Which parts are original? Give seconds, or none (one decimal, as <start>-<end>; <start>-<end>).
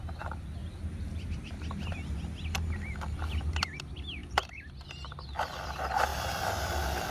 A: 0.0-0.6; 1.9-4.2; 4.7-7.1